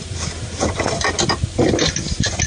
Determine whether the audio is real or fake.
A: real